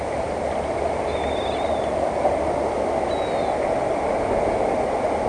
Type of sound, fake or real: real